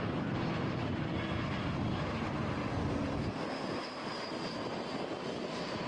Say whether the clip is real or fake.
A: real